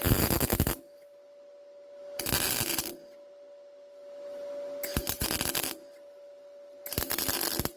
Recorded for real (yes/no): yes